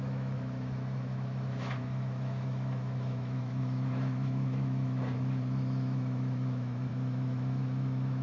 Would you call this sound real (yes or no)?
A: no